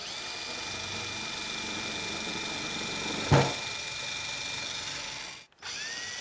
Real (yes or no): yes